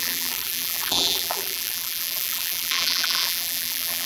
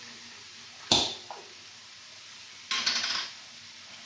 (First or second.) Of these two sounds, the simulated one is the first